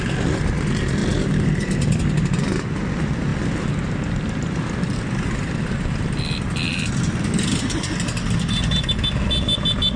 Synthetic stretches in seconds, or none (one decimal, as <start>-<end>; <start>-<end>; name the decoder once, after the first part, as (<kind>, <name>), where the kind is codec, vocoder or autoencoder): none